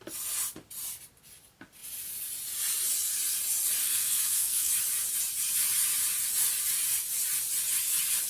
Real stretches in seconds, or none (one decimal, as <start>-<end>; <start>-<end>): 0.0-3.8; 4.7-8.3